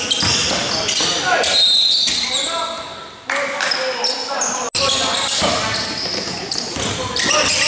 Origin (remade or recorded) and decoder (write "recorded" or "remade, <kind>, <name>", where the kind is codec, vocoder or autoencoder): recorded